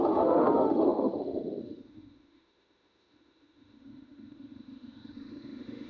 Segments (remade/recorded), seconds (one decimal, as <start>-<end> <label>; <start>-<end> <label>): 0.0-5.9 remade